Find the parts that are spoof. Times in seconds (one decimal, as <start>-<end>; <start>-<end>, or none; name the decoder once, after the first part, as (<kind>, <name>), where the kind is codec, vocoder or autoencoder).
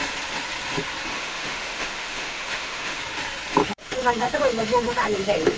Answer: 1.1-3.0 (autoencoder, DAC-VAE); 3.6-5.6